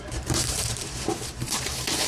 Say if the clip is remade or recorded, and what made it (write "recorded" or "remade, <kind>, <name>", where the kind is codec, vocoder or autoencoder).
remade, vocoder, BigVGAN v2